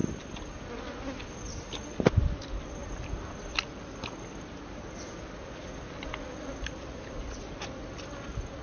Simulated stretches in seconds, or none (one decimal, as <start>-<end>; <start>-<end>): none